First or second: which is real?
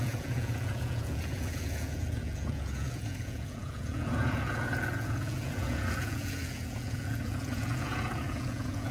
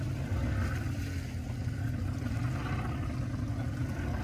second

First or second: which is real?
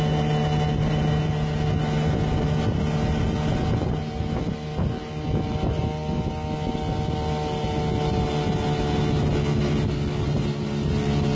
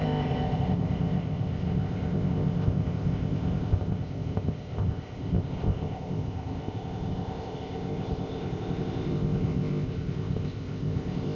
first